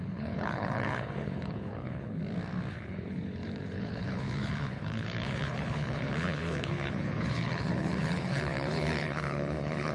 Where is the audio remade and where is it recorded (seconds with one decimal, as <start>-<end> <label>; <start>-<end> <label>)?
0.0-2.2 remade; 2.2-2.7 recorded; 2.7-9.9 remade